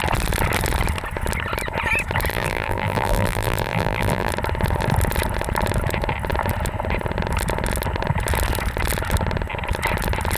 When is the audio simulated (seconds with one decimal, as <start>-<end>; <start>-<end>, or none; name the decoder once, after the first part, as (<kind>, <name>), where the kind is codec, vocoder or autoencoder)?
2.3-4.3 (vocoder, BigVGAN v2)